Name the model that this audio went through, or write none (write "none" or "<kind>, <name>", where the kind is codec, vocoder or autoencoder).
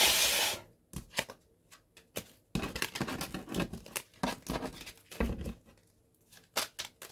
none